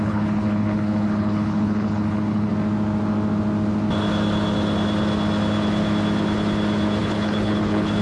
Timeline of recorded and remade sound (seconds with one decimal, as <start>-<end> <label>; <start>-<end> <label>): 0.0-2.5 remade; 2.5-7.0 recorded; 7.0-8.0 remade